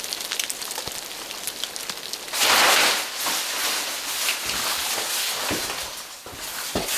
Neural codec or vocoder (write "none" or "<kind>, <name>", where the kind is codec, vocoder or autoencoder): none